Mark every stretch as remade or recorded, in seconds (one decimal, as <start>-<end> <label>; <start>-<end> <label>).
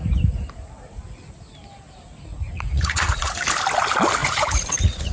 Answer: 0.0-2.3 recorded; 2.3-3.4 remade; 3.4-4.2 recorded; 4.2-5.1 remade